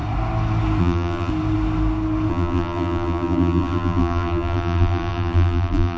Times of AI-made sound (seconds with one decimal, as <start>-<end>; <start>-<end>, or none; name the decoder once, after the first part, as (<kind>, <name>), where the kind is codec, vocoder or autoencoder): 0.8-1.3 (vocoder, BigVGAN v2); 2.3-6.0